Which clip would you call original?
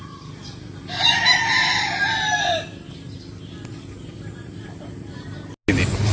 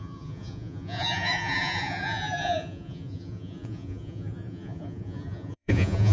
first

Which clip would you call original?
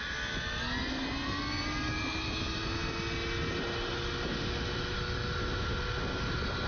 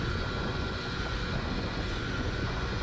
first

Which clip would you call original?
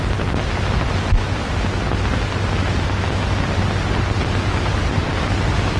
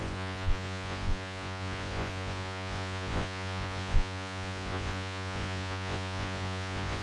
first